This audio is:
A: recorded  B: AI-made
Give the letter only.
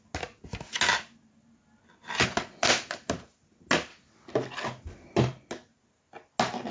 A